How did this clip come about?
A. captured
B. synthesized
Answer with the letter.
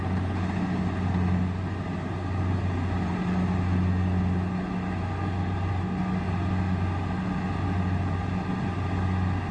A